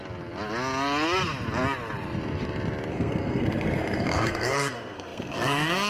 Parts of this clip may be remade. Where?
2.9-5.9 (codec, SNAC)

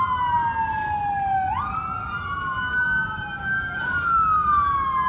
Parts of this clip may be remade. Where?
none

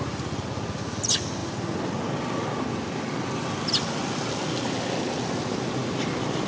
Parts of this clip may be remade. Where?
none

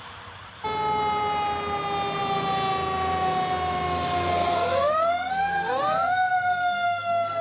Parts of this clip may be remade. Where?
4.3-7.4 (codec, SNAC)

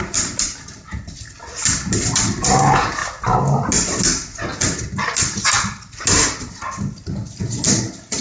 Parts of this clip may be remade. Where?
none

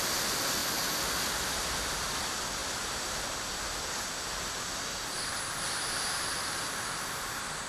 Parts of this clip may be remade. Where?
none

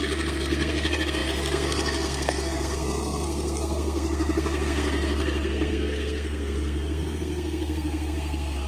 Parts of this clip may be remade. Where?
0.0-8.7 (codec, SNAC)